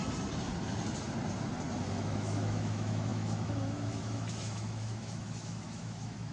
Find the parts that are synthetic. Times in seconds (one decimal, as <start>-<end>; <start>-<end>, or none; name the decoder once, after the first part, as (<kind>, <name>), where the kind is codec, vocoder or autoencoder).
1.8-6.3 (autoencoder, DAC-VAE)